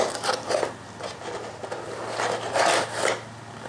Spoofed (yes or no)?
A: no